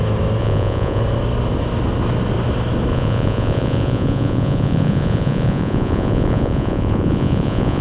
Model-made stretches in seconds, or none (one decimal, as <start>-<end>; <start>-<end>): 0.4-1.0; 2.9-7.8